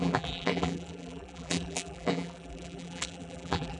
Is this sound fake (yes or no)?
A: yes